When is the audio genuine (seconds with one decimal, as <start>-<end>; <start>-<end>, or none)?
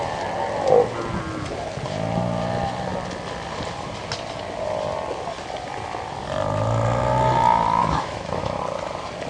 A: 0.0-7.8; 8.6-9.3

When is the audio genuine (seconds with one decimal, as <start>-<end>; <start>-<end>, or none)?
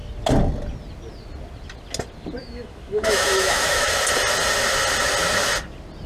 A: 0.0-2.4; 3.9-6.1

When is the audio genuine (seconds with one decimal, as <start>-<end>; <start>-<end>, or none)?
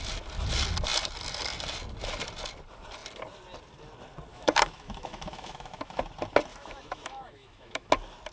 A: 0.0-4.3; 6.0-6.5; 7.9-8.3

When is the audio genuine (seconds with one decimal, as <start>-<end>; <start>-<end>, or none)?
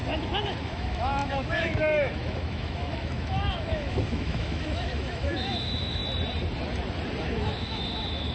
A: 0.0-0.6; 6.0-7.2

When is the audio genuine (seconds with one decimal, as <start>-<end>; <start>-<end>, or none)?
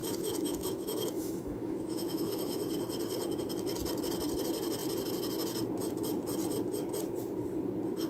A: 2.7-8.1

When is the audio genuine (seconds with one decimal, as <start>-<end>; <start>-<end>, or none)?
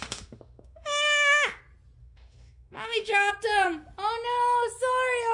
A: 1.6-2.0; 3.3-5.3